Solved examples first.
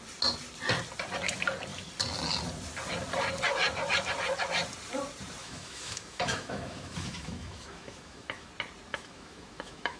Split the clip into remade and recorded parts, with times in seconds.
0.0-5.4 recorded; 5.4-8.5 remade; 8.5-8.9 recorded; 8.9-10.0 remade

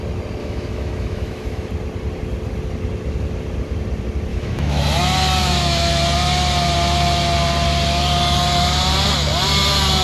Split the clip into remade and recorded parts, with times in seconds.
0.0-0.4 recorded; 0.4-1.7 remade; 1.7-4.3 recorded; 4.3-4.8 remade; 4.8-5.4 recorded; 5.4-5.9 remade; 5.9-10.0 recorded